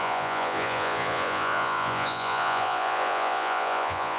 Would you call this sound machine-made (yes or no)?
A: yes